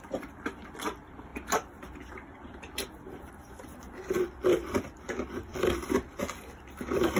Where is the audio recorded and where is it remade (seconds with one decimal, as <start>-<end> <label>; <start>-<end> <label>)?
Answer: 0.0-7.2 recorded